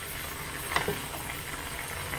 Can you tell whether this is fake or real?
real